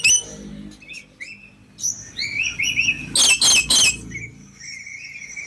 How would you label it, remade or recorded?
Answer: recorded